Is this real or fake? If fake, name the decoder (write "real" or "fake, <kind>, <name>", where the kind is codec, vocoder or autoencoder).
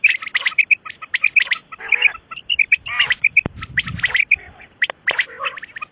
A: real